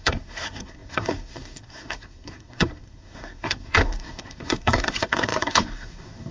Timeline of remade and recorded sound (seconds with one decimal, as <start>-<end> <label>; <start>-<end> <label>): 0.0-6.3 remade